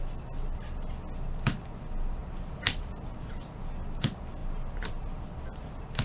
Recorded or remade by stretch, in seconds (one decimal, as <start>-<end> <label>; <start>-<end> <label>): 0.0-2.2 recorded; 2.2-3.3 remade; 3.3-4.4 recorded; 4.4-5.6 remade; 5.6-6.0 recorded